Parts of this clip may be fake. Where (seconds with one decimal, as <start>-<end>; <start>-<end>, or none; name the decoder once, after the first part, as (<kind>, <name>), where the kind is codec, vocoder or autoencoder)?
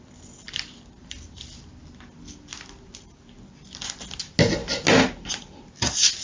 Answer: none